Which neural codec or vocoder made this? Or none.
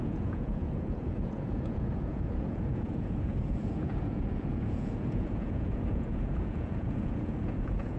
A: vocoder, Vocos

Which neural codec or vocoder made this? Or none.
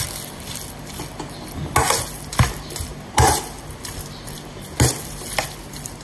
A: none